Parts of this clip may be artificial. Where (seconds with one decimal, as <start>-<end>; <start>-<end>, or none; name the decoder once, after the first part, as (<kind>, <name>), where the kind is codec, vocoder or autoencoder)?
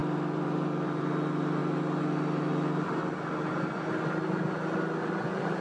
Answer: 0.0-1.1 (vocoder, BigVGAN v2)